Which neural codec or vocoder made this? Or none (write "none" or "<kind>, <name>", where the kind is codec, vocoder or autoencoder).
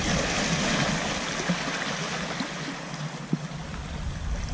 none